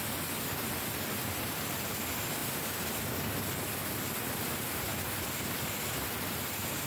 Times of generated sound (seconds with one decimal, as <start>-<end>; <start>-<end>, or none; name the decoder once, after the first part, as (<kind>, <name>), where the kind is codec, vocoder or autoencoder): none

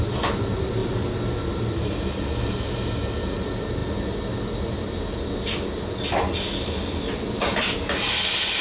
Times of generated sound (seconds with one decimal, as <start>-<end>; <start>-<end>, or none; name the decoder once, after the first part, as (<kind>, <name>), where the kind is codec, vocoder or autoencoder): none